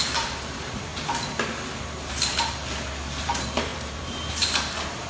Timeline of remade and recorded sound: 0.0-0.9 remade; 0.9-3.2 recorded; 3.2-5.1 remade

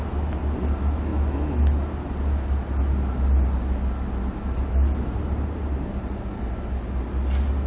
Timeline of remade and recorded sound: 0.0-7.7 recorded

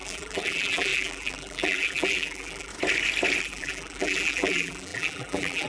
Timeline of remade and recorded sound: 0.0-2.7 remade; 2.7-3.4 recorded; 3.4-5.7 remade

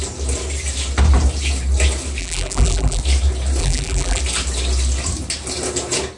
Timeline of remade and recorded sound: 0.0-2.2 recorded; 2.2-3.0 remade; 3.0-3.6 recorded; 3.6-4.2 remade; 4.2-6.2 recorded

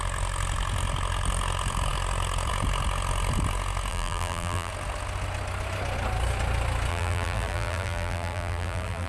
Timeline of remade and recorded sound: 0.0-3.9 recorded; 3.9-4.7 remade; 4.7-6.9 recorded; 6.9-9.1 remade

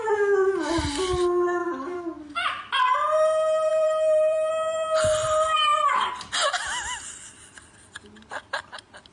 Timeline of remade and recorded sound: 0.0-1.6 recorded; 1.6-2.2 remade; 2.2-3.7 recorded; 3.7-4.5 remade; 4.5-5.2 recorded; 5.2-6.1 remade; 6.1-9.1 recorded

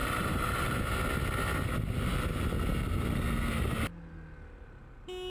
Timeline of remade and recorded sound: 0.0-0.8 remade; 0.8-5.3 recorded